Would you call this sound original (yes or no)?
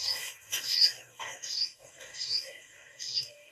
no